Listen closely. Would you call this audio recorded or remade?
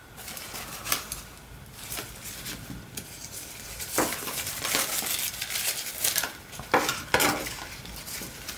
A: recorded